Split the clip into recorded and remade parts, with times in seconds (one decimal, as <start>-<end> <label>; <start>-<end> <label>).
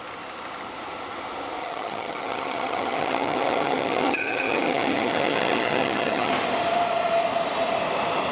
0.0-1.6 recorded; 1.6-6.3 remade; 6.3-8.3 recorded